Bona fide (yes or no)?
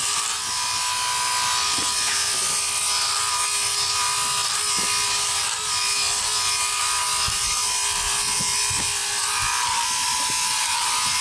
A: yes